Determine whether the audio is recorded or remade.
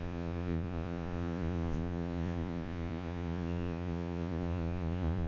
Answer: remade